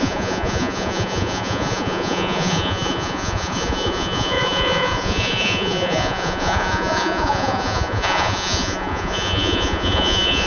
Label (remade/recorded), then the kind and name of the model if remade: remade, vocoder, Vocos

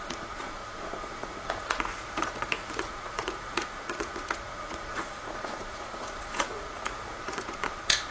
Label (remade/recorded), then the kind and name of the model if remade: remade, vocoder, Vocos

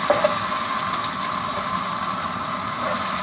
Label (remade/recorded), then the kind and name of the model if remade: recorded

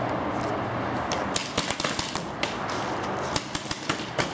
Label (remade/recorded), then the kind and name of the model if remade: recorded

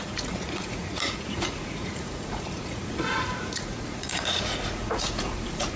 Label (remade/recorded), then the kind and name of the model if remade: remade, vocoder, Vocos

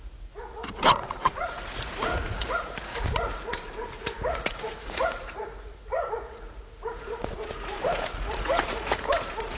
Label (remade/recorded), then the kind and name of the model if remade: remade, vocoder, Vocos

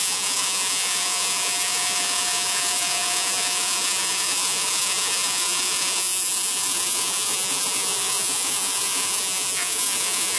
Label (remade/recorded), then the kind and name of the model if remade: remade, vocoder, Vocos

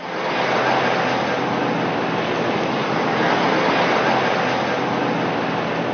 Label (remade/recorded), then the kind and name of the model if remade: recorded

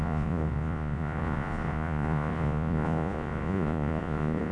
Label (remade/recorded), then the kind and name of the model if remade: remade, vocoder, Vocos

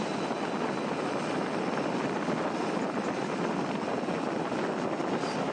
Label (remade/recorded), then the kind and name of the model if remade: recorded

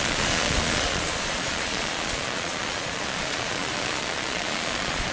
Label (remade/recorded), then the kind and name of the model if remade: remade, vocoder, Vocos